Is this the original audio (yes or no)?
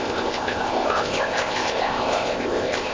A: no